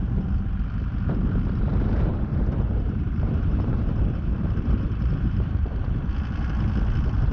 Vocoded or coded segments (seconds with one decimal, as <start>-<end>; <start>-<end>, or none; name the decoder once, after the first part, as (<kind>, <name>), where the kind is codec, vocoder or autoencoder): 1.7-6.0 (vocoder, BigVGAN v2)